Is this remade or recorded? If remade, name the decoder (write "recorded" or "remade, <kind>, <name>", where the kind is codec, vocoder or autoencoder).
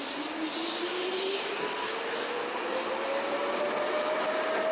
recorded